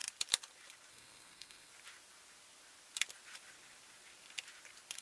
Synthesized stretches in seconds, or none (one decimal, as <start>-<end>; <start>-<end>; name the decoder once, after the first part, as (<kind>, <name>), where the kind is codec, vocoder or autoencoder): 0.9-1.7 (codec, SNAC)